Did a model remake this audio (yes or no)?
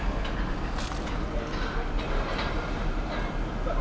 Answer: no